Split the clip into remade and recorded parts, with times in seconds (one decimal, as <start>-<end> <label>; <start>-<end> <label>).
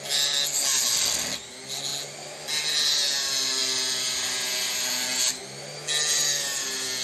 0.0-7.0 recorded